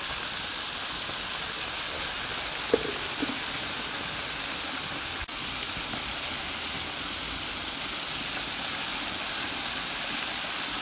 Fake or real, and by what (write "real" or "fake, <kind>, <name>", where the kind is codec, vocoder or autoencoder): real